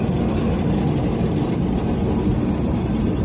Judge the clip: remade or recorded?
recorded